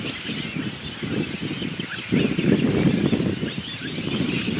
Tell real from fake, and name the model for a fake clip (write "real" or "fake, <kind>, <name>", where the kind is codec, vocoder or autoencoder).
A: real